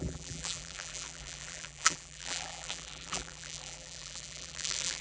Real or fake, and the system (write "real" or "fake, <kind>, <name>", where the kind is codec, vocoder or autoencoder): fake, vocoder, BigVGAN v2